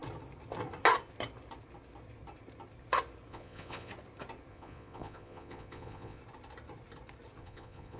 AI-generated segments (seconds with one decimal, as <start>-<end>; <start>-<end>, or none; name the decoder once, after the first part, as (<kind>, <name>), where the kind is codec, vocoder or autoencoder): 3.3-3.9 (vocoder, Vocos); 4.5-6.2; 7.4-8.0

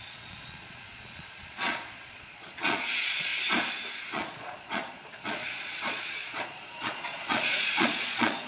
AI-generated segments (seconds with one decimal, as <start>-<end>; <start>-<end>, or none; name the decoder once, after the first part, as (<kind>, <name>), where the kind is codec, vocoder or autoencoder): 0.0-3.3 (vocoder, Vocos); 4.1-8.5

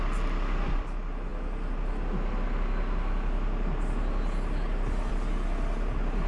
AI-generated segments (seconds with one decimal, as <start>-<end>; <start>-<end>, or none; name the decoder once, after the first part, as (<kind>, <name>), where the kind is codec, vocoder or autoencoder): none

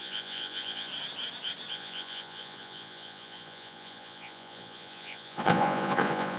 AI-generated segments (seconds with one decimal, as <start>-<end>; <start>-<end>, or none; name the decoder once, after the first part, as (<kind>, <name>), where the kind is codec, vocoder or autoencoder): 0.0-0.9 (vocoder, Vocos); 1.7-6.4

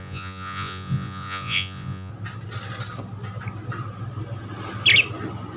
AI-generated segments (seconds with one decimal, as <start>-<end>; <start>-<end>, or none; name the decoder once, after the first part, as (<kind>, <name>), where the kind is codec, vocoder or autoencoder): 0.0-2.1 (vocoder, Vocos)